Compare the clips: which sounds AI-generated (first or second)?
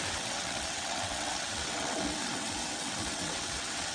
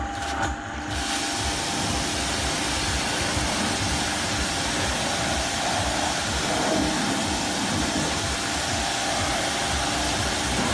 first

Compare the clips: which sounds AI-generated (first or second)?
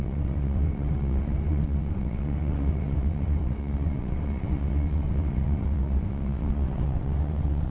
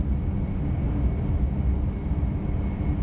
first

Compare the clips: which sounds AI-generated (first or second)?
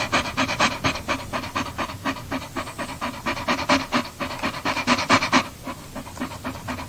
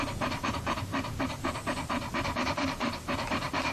second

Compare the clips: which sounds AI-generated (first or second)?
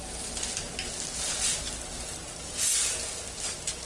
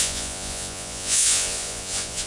second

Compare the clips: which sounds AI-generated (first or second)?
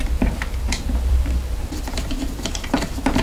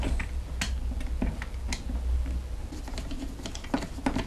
first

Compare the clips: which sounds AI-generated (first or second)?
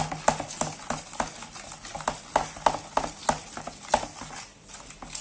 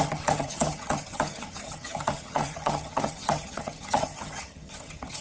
second